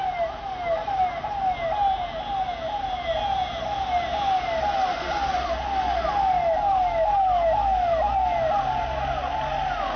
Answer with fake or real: real